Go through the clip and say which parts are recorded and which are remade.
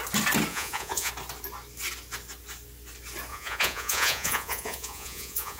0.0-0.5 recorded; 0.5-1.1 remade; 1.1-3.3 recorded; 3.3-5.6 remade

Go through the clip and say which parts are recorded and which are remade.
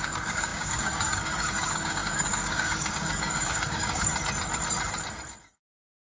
0.0-4.1 remade; 4.1-5.4 recorded; 5.4-6.1 remade